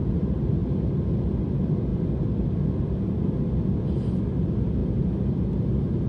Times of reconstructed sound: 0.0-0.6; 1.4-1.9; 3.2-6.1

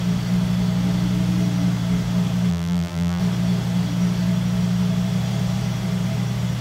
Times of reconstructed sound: 2.5-3.2